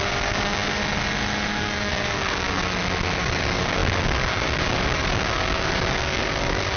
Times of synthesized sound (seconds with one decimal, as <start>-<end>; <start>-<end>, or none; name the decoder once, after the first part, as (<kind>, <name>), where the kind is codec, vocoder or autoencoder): 0.0-0.8 (codec, DAC); 1.5-2.6; 3.2-6.8